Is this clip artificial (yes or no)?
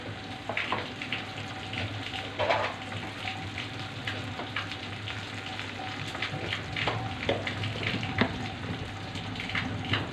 no